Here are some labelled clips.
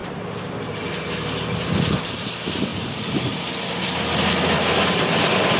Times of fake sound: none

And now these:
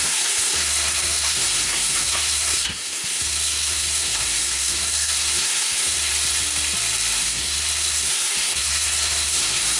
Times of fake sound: 0.0-6.1 (codec, SNAC); 7.2-9.8

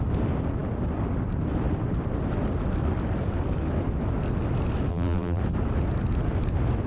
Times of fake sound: 4.9-5.4 (vocoder, BigVGAN v2)

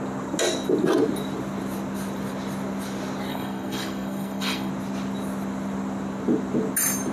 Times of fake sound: 3.3-4.7 (codec, SNAC)

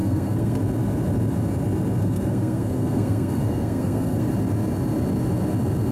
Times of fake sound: 0.0-0.6 (codec, SNAC); 2.0-4.3

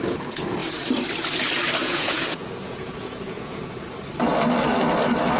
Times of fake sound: 1.8-3.7 (vocoder, Vocos)

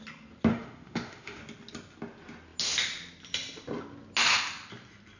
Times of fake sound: 0.5-1.4 (autoencoder, DAC-VAE)

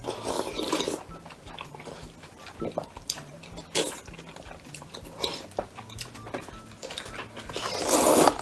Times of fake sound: none